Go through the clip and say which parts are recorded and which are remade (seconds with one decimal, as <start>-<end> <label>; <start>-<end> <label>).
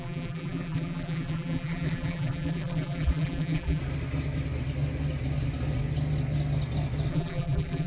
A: 0.0-3.8 remade; 3.8-7.1 recorded; 7.1-7.9 remade